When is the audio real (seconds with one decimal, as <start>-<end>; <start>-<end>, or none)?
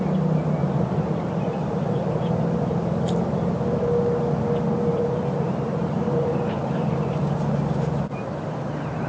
0.0-1.6; 2.2-4.9